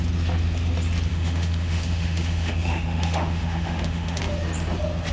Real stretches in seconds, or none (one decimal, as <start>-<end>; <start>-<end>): 0.0-1.1; 4.2-5.1